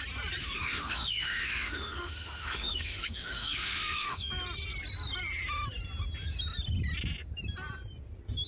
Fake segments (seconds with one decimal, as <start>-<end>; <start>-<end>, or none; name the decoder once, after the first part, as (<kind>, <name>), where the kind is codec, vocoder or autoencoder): 0.4-4.3 (autoencoder, DAC-VAE)